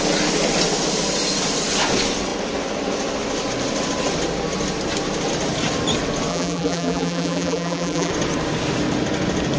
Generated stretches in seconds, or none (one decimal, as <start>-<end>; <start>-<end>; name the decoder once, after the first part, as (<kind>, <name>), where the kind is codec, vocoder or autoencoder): 6.3-8.1 (vocoder, BigVGAN v2)